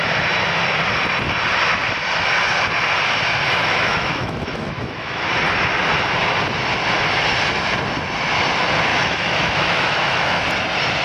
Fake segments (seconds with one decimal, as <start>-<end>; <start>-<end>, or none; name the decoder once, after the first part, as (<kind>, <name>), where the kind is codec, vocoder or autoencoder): 3.6-5.3 (autoencoder, DAC-VAE); 8.9-10.4